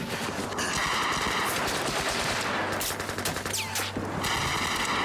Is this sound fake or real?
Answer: real